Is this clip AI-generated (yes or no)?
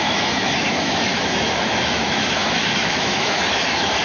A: yes